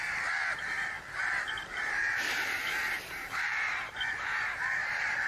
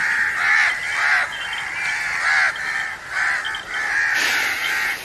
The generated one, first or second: first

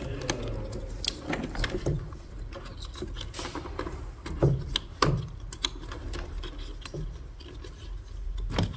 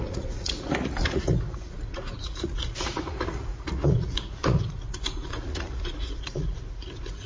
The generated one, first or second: second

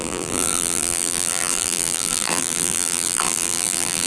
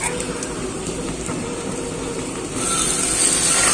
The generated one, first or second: first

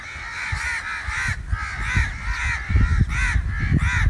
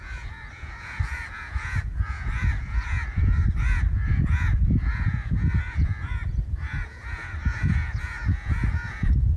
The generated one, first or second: second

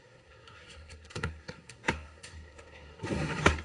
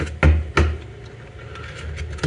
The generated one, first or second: first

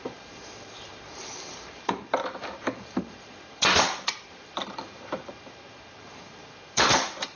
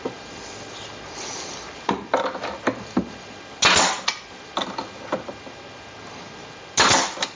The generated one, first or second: first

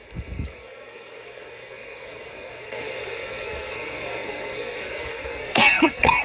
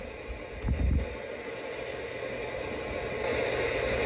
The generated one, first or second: first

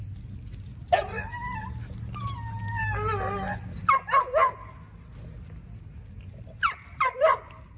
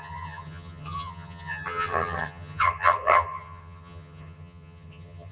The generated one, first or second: second